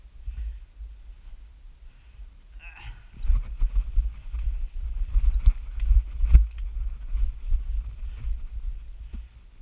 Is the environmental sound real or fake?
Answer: real